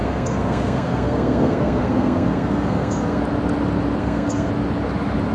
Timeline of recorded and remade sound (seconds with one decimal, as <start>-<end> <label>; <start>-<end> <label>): 0.0-3.2 remade; 3.2-4.0 recorded; 4.0-4.5 remade; 4.5-5.3 recorded